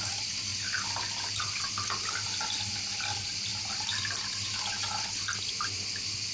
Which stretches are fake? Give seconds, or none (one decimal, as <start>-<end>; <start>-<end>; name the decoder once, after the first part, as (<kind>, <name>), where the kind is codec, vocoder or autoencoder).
none